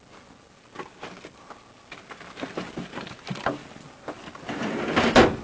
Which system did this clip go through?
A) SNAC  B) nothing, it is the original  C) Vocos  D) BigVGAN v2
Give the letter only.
B